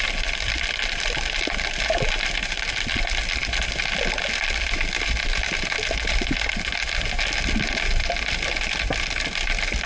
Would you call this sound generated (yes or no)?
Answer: no